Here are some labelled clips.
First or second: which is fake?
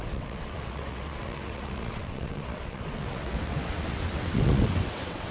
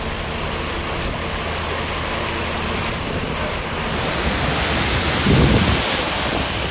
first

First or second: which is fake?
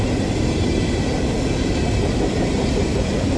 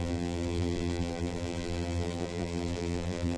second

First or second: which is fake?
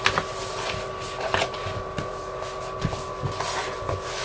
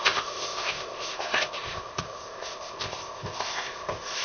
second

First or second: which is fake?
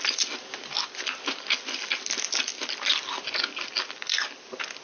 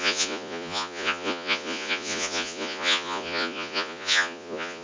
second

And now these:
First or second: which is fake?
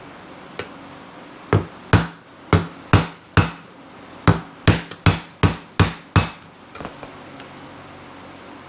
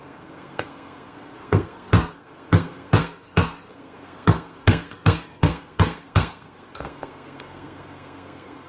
second